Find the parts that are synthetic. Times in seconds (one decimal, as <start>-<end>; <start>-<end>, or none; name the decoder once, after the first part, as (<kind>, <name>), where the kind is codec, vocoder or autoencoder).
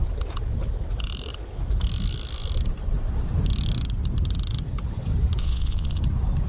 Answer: 5.4-6.0 (vocoder, Vocos)